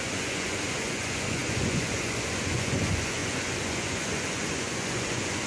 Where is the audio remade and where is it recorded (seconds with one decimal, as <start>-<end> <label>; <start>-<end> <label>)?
0.0-5.5 remade